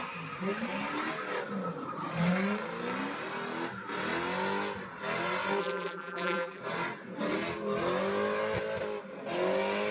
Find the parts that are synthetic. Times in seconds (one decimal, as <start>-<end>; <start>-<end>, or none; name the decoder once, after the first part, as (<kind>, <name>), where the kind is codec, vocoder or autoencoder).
5.6-6.6 (vocoder, BigVGAN v2)